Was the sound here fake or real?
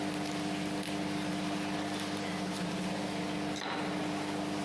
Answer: real